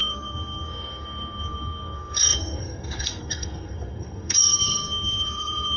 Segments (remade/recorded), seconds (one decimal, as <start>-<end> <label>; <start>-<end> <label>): 0.0-5.8 remade